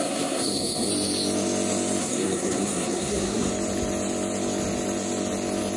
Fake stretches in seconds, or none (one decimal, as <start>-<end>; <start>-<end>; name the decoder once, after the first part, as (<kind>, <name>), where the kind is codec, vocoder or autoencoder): 0.0-0.9 (codec, SNAC); 2.0-3.5